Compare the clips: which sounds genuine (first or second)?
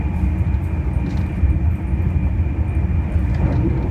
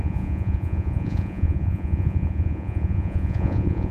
first